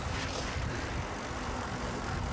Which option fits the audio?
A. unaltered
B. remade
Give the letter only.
A